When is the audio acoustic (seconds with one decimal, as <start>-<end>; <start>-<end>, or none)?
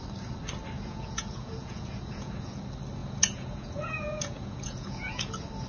0.0-0.9; 2.6-3.0; 5.3-5.7